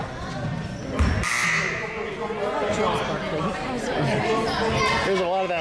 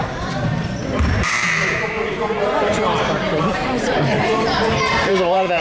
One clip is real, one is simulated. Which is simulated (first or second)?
second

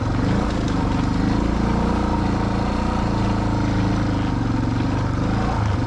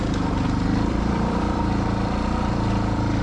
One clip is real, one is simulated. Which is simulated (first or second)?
second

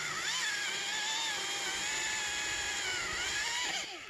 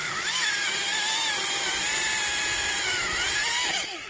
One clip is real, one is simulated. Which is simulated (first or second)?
second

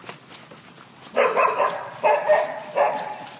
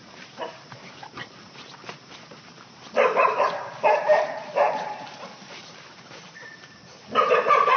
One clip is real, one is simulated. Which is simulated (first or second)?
second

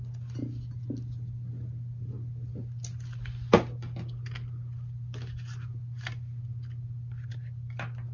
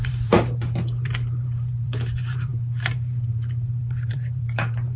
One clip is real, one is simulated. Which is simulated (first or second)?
second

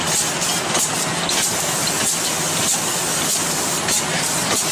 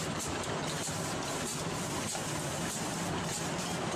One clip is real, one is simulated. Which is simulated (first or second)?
second